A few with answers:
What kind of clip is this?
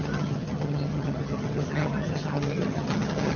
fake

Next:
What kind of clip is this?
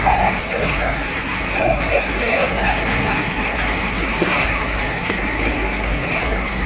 fake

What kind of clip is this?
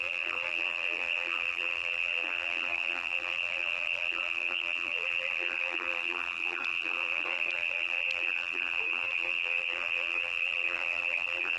fake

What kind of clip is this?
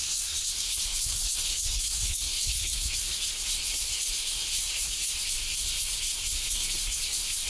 fake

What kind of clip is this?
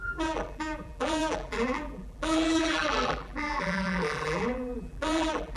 fake